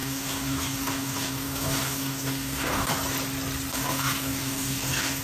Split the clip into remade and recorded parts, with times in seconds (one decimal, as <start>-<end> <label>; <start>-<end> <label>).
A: 0.0-2.9 remade; 2.9-3.7 recorded; 3.7-5.2 remade